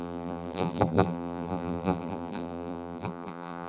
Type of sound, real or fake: fake